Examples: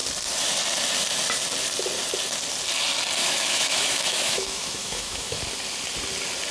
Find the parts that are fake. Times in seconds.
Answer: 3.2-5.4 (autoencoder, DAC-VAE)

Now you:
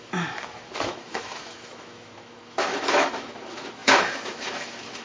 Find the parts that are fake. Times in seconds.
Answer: 0.0-5.0 (autoencoder, DAC-VAE)

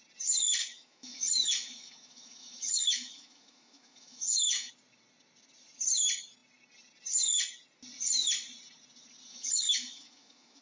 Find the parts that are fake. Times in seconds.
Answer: 0.6-4.7 (autoencoder, DAC-VAE); 9.3-10.6

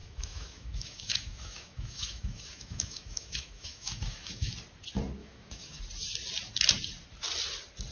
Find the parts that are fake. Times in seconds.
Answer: 0.0-4.5 (autoencoder, DAC-VAE); 5.2-5.8

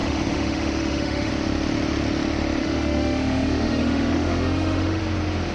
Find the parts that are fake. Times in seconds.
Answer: 0.0-1.3 (autoencoder, DAC-VAE); 2.6-5.0